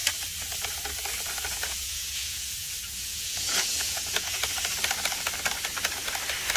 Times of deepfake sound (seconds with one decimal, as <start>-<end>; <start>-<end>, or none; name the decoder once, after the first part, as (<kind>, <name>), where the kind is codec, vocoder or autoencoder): 1.5-4.4 (vocoder, Vocos)

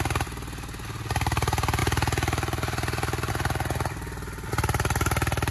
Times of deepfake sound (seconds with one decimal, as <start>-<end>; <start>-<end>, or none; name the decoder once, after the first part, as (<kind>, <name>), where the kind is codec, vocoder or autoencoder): none

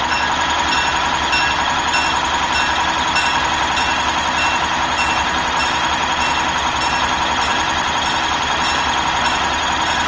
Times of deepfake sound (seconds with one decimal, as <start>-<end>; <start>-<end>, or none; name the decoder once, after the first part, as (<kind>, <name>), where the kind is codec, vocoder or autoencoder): none

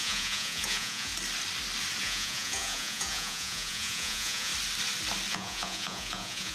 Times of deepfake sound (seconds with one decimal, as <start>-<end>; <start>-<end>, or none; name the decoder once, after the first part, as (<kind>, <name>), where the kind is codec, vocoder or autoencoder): 0.0-1.1 (vocoder, Vocos); 2.0-4.5; 5.3-6.5

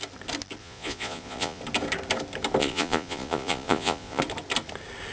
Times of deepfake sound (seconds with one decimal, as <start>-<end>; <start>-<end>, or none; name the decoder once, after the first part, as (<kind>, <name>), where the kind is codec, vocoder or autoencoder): 0.6-1.6 (vocoder, Vocos); 2.6-4.2